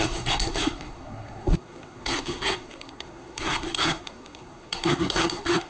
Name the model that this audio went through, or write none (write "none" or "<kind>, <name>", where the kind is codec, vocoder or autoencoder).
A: codec, SNAC